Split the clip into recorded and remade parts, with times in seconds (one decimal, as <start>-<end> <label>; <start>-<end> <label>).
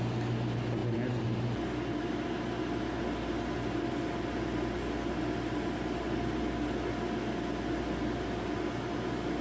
0.0-9.4 recorded